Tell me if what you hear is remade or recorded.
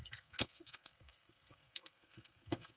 remade